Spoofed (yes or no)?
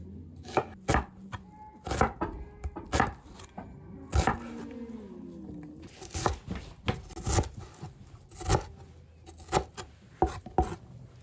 no